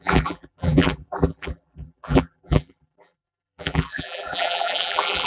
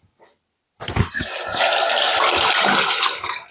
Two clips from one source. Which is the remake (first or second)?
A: first